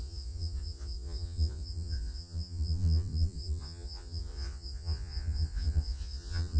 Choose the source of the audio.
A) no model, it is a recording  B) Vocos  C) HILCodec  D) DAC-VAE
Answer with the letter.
B